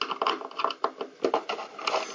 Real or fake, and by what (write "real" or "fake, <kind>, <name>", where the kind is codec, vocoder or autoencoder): real